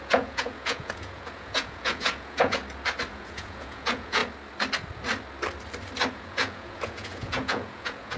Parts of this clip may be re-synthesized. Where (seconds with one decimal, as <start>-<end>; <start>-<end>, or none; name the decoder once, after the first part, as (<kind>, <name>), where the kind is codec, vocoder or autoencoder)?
0.0-2.6 (vocoder, Vocos); 3.1-4.2; 6.1-8.2